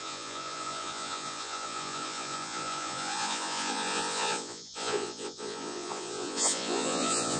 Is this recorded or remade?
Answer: remade